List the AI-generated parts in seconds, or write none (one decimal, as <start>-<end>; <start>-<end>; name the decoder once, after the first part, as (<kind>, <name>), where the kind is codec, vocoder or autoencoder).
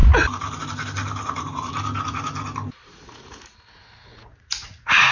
2.8-5.1 (vocoder, Vocos)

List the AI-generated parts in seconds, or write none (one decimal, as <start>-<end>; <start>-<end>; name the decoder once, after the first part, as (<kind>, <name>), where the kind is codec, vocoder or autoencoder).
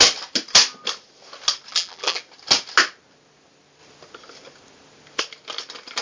1.7-2.2 (vocoder, BigVGAN v2)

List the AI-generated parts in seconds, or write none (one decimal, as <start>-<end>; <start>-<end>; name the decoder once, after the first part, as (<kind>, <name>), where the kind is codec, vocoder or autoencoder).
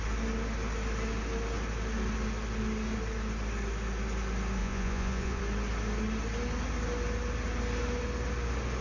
4.6-5.4 (vocoder, Vocos)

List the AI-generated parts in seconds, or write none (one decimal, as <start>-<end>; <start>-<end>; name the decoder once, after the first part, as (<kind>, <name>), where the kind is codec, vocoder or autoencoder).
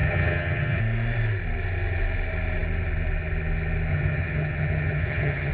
0.0-0.8 (vocoder, HiFi-GAN); 3.9-5.5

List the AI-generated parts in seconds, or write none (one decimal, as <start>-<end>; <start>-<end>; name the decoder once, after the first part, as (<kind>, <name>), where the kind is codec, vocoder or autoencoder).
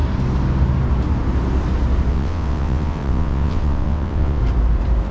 2.1-4.4 (vocoder, WaveNeXt)